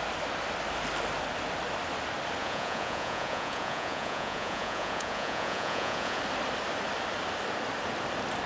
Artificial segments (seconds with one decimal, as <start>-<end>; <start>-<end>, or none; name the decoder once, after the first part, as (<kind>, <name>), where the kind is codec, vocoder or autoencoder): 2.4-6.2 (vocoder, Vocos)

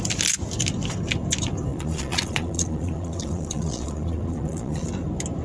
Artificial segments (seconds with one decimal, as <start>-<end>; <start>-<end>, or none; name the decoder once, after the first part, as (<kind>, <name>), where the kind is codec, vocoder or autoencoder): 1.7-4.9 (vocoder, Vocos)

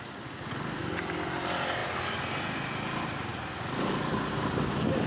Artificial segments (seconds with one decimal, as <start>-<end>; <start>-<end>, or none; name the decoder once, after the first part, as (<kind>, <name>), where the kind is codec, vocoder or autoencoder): none